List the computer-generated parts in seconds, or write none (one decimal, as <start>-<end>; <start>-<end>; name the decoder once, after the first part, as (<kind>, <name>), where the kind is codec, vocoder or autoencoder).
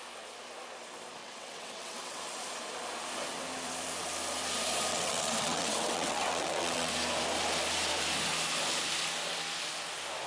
1.2-2.2 (vocoder, WaveNeXt); 4.9-6.9